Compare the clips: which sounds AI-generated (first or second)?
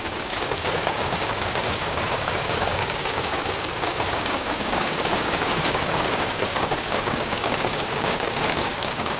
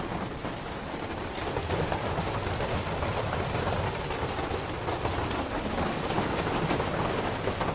first